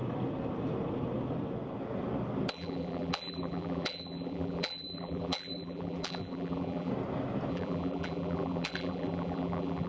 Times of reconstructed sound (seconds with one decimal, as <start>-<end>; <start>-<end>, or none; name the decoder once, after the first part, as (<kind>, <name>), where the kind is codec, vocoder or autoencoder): 2.5-6.9 (vocoder, BigVGAN v2); 7.5-9.9